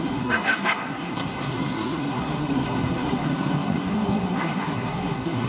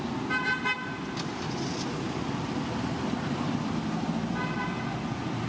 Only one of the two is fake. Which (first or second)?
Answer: first